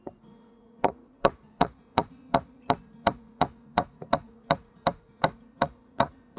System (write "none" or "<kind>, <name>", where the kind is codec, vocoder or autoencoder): vocoder, Vocos